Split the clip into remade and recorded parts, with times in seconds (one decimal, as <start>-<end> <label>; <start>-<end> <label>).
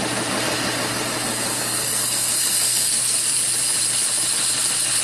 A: 0.0-1.5 recorded; 1.5-3.4 remade; 3.4-5.0 recorded